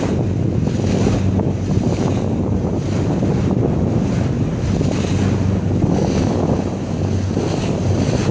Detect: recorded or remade recorded